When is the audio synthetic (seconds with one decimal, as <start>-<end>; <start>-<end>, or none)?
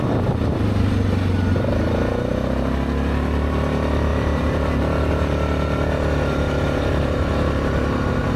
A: 4.1-5.1